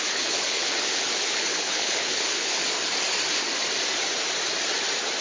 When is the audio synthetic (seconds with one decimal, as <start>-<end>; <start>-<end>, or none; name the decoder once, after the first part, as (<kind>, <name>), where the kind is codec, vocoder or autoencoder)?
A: 0.0-2.6 (codec, HILCodec)